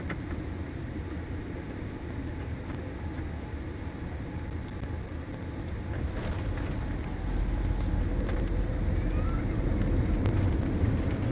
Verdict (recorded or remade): recorded